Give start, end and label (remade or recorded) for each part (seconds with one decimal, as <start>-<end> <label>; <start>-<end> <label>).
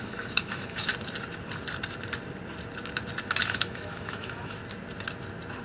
0.0-0.9 remade; 0.9-3.4 recorded; 3.4-4.6 remade; 4.6-5.6 recorded